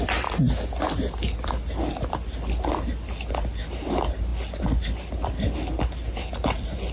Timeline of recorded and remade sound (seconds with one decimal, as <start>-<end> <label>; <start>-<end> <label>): 0.0-6.9 recorded